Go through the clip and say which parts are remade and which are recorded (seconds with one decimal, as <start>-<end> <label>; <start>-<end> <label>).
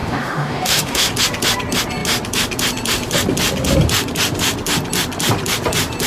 0.0-1.1 remade; 1.1-6.1 recorded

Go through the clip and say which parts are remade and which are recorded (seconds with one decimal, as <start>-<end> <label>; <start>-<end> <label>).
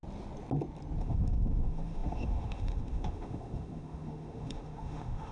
0.0-1.0 recorded; 1.0-5.3 remade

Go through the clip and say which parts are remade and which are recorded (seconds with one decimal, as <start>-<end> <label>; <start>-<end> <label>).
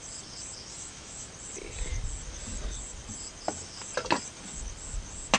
0.0-0.7 recorded; 0.7-1.3 remade; 1.3-5.4 recorded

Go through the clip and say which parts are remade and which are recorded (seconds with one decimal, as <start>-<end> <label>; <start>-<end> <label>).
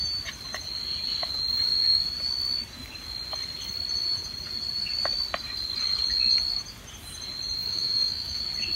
0.0-7.6 recorded; 7.6-8.4 remade; 8.4-8.8 recorded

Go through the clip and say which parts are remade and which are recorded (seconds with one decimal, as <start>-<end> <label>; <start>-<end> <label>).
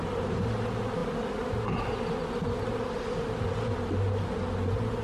0.0-5.0 recorded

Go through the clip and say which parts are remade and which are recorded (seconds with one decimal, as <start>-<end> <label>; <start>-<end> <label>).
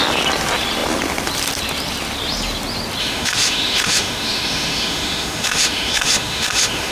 0.0-3.0 recorded; 3.0-6.9 remade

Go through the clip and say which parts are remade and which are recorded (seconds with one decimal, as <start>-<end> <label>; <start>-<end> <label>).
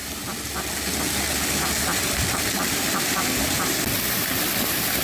0.0-5.0 recorded